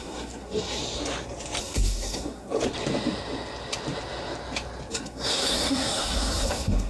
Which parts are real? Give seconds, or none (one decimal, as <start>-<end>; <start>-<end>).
0.8-1.6; 2.5-4.9